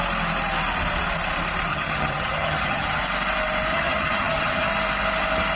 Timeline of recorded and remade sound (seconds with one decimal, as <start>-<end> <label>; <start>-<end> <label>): 0.0-1.7 recorded; 1.7-3.0 remade; 3.0-3.7 recorded; 3.7-4.7 remade; 4.7-5.6 recorded